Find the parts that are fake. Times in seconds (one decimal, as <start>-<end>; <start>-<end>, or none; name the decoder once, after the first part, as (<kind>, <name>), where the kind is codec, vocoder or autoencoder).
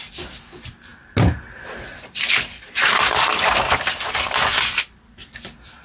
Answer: none